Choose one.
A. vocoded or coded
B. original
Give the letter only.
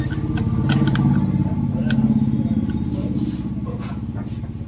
B